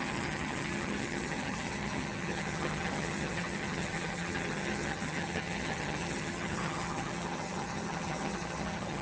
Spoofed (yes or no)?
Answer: yes